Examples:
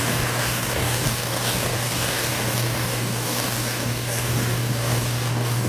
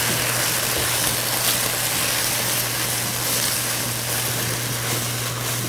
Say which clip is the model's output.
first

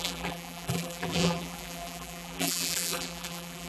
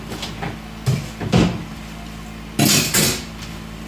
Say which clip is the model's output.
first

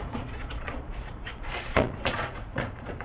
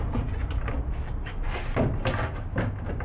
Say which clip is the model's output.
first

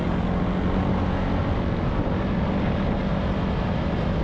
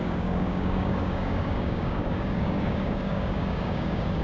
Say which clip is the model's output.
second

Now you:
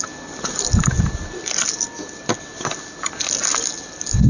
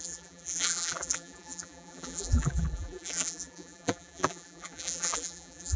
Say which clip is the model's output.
second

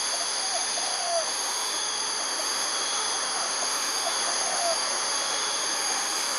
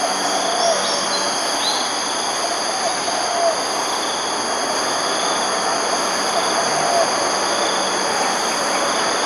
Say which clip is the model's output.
first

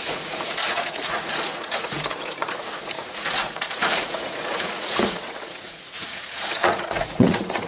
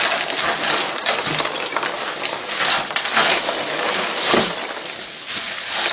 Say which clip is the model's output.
first